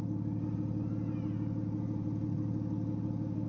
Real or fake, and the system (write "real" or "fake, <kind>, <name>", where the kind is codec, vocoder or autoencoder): real